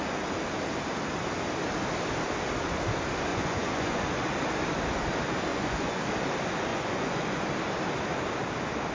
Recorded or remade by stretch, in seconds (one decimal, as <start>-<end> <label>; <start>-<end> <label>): 0.0-3.3 recorded; 3.3-4.0 remade; 4.0-5.5 recorded; 5.5-6.0 remade; 6.0-6.7 recorded; 6.7-7.4 remade; 7.4-8.9 recorded